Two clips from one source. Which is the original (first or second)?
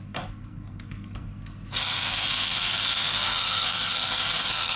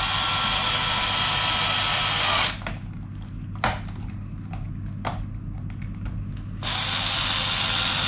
second